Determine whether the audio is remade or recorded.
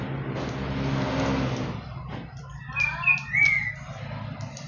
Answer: recorded